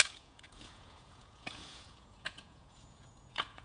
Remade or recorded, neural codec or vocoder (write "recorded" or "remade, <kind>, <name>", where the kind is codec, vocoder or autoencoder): remade, vocoder, Vocos